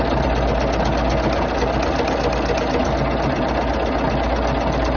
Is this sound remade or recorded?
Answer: recorded